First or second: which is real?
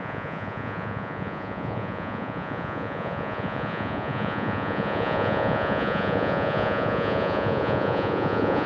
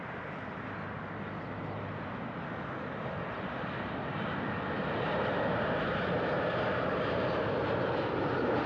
second